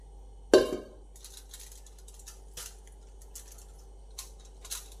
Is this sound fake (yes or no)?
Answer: no